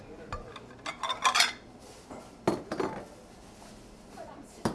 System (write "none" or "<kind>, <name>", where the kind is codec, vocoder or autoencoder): none